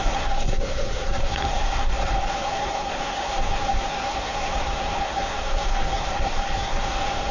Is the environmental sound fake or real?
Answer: fake